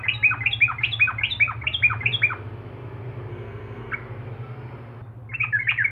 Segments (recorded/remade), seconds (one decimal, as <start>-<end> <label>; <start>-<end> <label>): 0.0-3.3 recorded; 3.3-3.9 remade; 3.9-5.9 recorded